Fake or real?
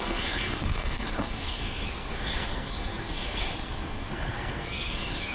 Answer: fake